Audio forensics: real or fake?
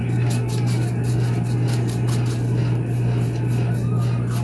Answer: real